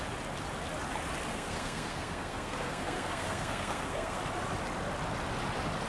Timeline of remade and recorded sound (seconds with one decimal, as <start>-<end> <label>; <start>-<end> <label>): 0.0-1.3 recorded; 1.3-4.2 remade; 4.2-5.9 recorded